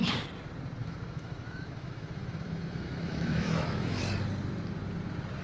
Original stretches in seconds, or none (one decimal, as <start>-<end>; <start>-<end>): 0.0-0.8; 4.0-5.4